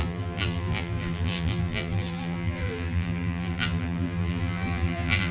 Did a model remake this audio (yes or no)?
yes